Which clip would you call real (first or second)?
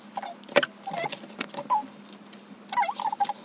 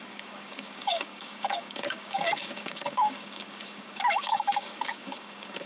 first